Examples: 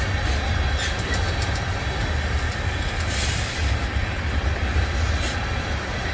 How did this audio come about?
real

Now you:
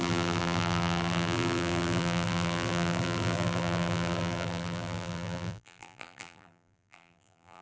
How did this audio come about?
fake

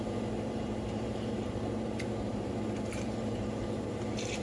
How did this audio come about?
fake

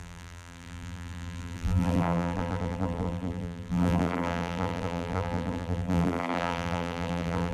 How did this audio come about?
fake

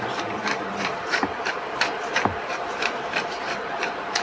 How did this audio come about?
fake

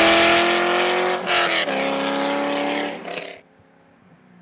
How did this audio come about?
real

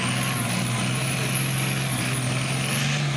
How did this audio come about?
real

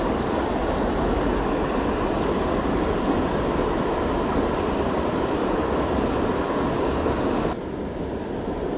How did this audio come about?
real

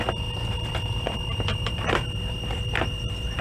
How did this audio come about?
fake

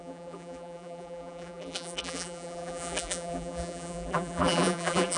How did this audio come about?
fake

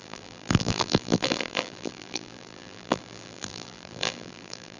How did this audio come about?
fake